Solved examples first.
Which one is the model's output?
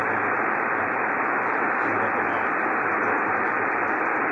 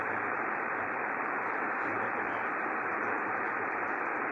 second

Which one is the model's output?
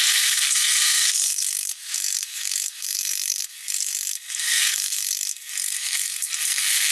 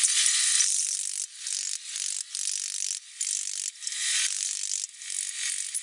first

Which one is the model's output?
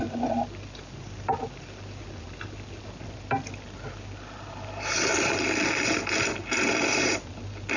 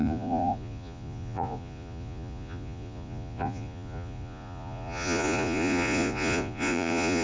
second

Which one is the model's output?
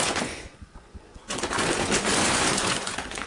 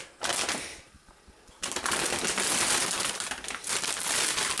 first